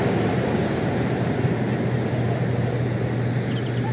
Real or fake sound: real